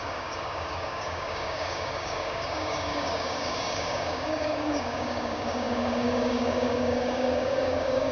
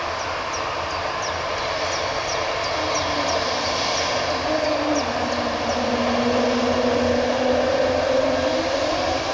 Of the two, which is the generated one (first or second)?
first